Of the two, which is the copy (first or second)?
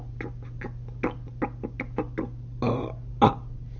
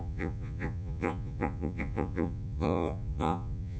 second